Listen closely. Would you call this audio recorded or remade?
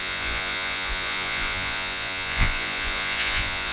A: remade